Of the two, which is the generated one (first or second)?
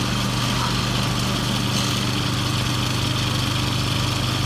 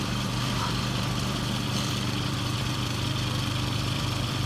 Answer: second